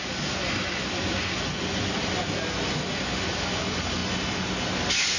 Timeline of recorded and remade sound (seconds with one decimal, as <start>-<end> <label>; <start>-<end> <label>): 0.0-5.2 recorded